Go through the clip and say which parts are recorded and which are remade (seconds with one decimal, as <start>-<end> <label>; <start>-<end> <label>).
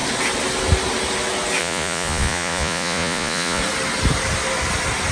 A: 0.0-1.6 recorded; 1.6-3.6 remade; 3.6-5.1 recorded